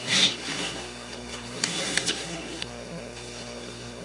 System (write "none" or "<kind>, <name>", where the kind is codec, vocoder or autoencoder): codec, SNAC